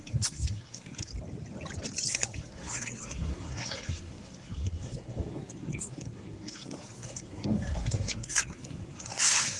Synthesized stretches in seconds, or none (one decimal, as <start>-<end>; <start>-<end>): 0.0-1.1; 2.1-9.6